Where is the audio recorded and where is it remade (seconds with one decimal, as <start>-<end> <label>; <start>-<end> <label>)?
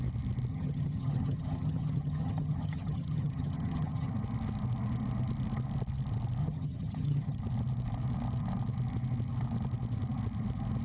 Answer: 0.0-0.5 recorded; 0.5-4.1 remade; 4.1-6.4 recorded; 6.4-7.4 remade; 7.4-10.8 recorded